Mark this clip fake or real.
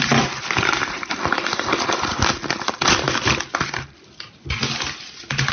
real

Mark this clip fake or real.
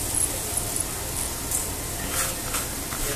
real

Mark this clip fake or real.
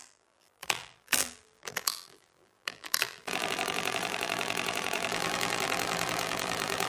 fake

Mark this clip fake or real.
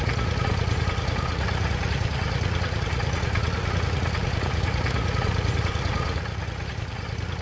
fake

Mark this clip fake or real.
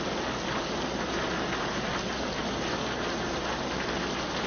real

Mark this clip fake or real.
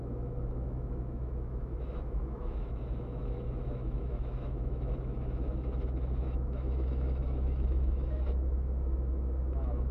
fake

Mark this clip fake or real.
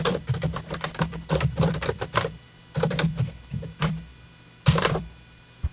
fake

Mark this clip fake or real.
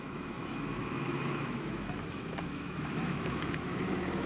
fake